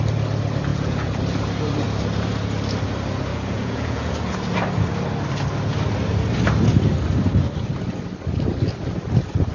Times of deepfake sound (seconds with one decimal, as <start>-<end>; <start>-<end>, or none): 0.7-1.2; 3.3-4.1